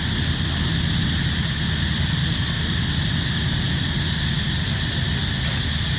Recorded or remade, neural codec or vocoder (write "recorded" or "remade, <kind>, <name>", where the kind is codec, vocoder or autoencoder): recorded